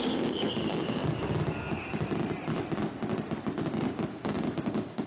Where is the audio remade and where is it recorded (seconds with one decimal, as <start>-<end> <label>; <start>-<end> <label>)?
0.0-1.0 remade; 1.0-4.1 recorded; 4.1-5.1 remade